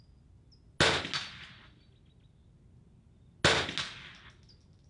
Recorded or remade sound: recorded